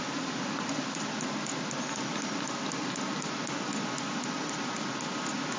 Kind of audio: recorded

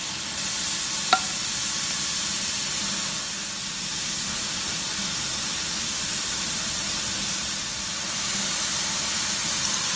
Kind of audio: recorded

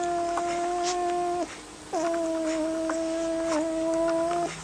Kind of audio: recorded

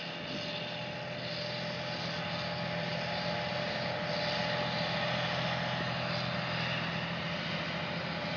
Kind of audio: recorded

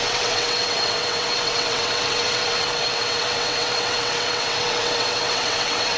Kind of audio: remade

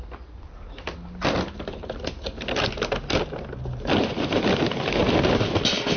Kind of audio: recorded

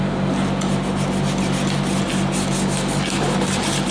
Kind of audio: recorded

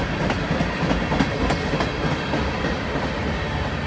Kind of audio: recorded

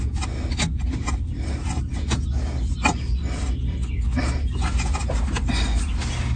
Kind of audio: recorded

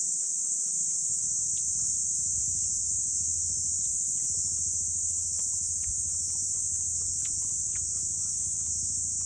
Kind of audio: recorded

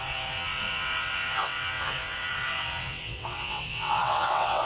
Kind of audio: remade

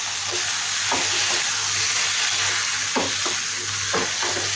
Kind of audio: recorded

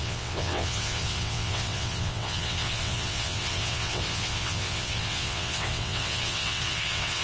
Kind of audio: remade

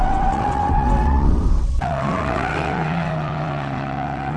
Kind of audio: remade